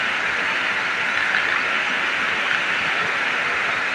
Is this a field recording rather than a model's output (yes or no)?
yes